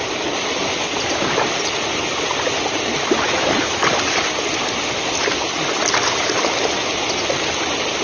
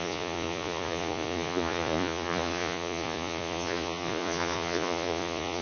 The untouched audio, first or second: first